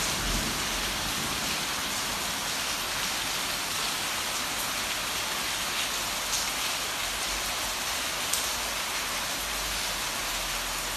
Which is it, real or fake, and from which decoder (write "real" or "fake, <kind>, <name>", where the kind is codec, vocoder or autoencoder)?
real